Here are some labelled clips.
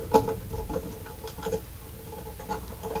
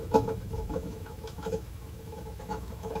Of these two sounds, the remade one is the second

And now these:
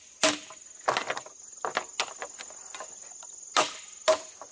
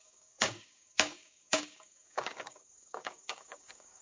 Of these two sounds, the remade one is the second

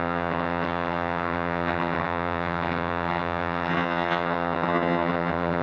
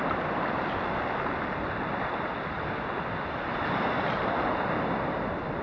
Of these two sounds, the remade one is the first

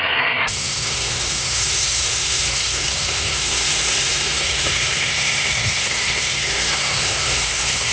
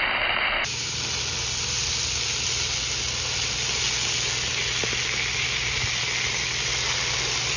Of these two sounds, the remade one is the first